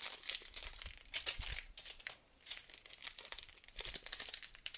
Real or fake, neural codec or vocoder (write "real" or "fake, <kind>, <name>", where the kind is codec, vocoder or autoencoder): real